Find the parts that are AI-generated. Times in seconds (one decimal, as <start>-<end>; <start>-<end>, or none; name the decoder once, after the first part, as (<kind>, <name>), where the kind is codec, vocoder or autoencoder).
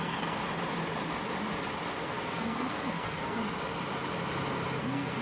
0.0-0.4 (codec, SNAC); 2.0-3.4; 4.8-5.2